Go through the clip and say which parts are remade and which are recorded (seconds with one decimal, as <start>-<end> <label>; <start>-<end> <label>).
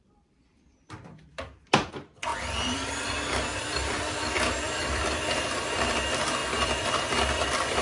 0.0-7.8 remade